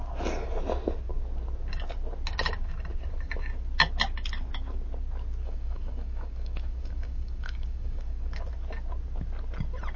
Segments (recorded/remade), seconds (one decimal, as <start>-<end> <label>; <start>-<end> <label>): 0.0-5.4 recorded; 5.4-8.3 remade; 8.3-10.0 recorded